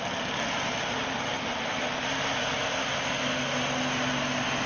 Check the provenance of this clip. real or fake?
real